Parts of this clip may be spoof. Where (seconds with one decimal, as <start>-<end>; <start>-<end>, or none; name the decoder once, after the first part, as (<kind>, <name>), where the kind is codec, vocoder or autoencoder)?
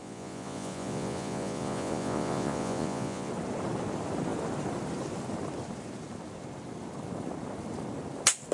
0.0-3.3 (vocoder, Vocos)